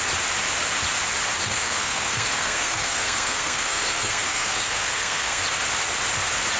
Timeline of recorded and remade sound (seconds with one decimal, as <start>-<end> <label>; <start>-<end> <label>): 0.0-1.4 recorded; 1.4-5.4 remade; 5.4-6.6 recorded